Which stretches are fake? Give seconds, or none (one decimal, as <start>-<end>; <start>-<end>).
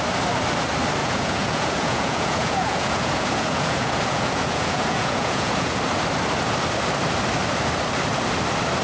1.0-5.8